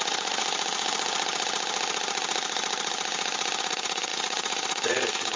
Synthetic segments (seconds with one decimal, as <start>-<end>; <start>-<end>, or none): 0.0-0.4; 3.6-5.4